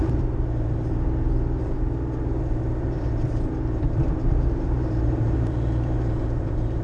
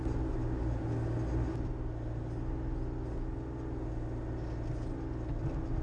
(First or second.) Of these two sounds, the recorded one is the second